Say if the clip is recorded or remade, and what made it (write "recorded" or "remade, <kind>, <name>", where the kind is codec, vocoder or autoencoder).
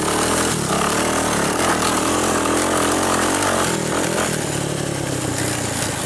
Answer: recorded